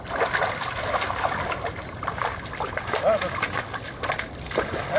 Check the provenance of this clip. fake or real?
fake